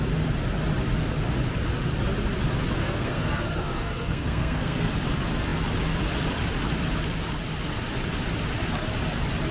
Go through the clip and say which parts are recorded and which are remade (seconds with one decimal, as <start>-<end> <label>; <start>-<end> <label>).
0.0-2.8 recorded; 2.8-4.9 remade; 4.9-9.5 recorded